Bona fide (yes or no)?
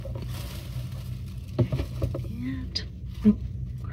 yes